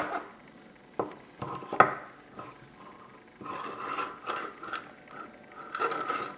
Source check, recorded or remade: recorded